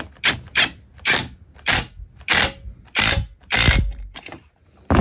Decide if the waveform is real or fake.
real